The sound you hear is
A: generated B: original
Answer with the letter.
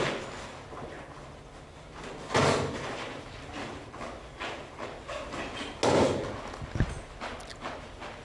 B